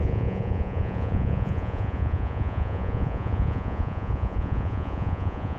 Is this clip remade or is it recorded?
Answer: remade